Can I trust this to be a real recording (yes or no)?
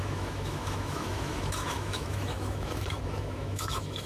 no